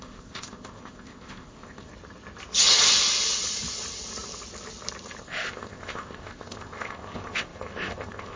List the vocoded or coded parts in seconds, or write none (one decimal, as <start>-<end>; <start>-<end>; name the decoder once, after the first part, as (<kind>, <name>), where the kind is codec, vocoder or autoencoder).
0.0-1.9 (codec, ZipCodec); 5.2-8.4